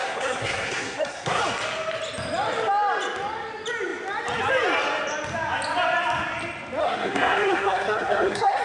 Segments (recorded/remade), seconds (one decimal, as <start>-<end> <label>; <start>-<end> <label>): 0.0-1.4 remade; 1.4-6.8 recorded; 6.8-8.6 remade